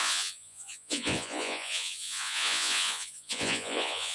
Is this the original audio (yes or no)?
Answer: no